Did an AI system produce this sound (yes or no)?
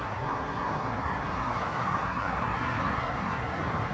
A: yes